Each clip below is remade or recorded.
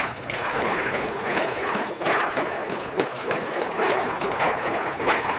remade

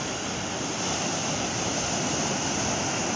recorded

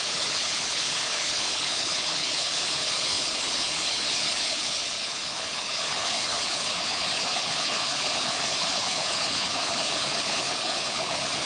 remade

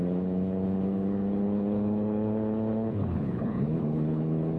remade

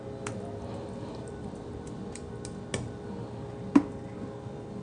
recorded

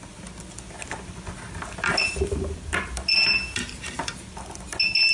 recorded